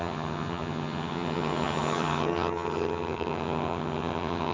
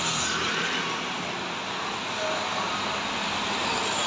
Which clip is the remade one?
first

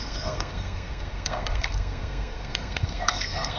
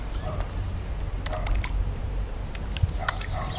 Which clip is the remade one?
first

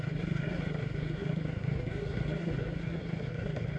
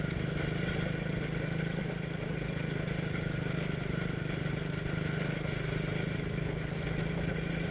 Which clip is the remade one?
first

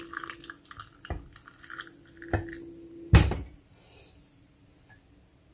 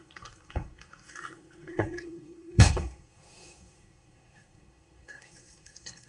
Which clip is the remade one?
second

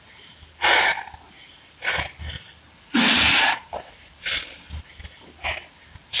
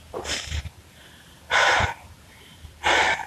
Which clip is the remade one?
second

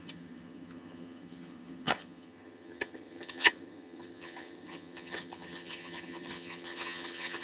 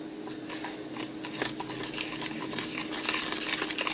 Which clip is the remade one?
first